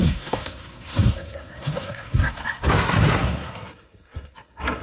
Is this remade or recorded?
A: remade